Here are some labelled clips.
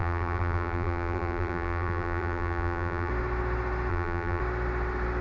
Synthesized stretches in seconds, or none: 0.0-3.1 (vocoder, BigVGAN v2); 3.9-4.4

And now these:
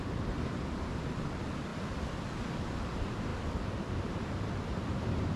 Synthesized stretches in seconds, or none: 0.0-1.7 (vocoder, BigVGAN v2); 2.7-3.3; 4.0-5.4

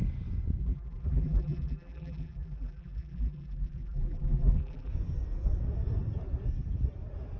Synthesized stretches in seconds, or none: 0.6-4.9 (vocoder, BigVGAN v2)

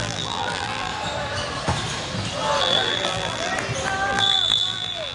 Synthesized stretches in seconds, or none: 0.0-0.9 (vocoder, BigVGAN v2); 2.6-3.5; 4.1-5.1

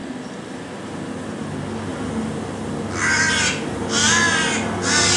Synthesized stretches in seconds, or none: 0.0-0.7 (vocoder, BigVGAN v2)

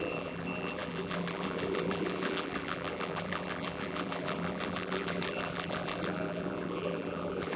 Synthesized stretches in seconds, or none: 0.0-7.6 (vocoder, BigVGAN v2)

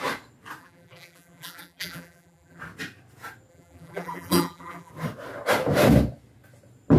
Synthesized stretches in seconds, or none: 0.6-2.6 (vocoder, BigVGAN v2); 3.5-4.9